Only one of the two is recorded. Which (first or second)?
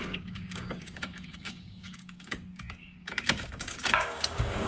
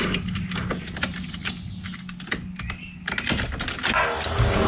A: second